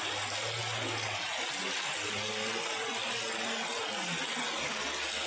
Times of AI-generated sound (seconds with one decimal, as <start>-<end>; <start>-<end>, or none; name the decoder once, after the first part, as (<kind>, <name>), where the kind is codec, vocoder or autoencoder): none